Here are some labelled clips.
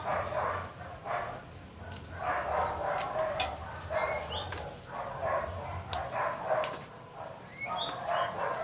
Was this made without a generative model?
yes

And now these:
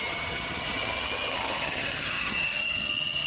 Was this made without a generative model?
no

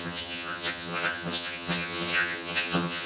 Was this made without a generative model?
no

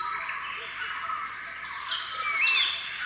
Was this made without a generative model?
yes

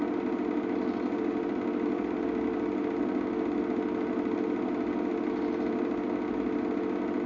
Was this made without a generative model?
yes